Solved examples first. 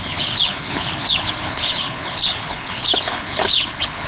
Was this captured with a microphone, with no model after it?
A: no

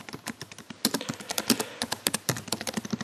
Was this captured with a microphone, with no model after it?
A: yes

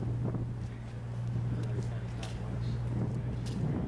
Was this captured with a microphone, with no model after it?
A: yes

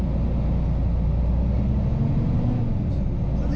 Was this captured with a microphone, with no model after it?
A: yes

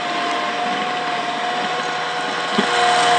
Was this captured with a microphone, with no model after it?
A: yes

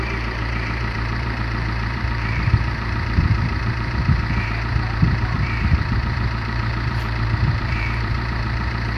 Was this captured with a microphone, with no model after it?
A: no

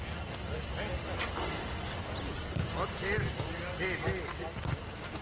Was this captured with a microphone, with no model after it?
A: yes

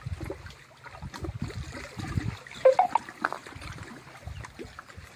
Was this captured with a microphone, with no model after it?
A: yes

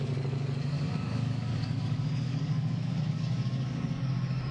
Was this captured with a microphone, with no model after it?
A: no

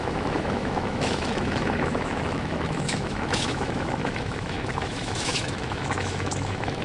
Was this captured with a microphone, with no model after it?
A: no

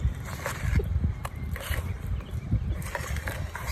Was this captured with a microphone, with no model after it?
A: no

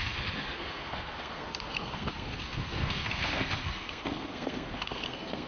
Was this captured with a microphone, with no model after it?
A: no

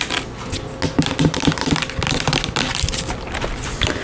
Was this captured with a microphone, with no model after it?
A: yes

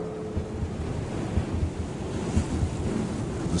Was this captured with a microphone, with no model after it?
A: yes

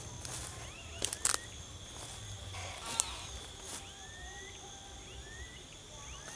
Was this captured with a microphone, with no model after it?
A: yes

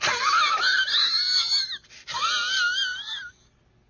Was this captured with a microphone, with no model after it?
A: yes